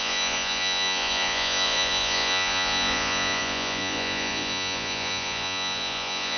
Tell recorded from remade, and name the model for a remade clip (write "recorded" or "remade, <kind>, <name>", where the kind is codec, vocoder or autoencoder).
remade, vocoder, Vocos